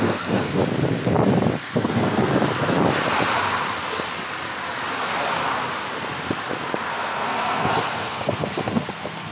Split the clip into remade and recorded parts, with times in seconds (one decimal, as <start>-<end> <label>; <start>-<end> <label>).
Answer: 0.0-0.6 remade; 0.6-1.6 recorded; 1.6-2.3 remade; 2.3-6.9 recorded; 6.9-9.3 remade